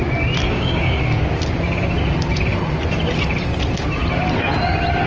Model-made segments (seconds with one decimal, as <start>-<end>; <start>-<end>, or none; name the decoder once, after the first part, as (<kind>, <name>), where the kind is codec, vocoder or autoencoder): 0.4-1.0 (codec, DAC)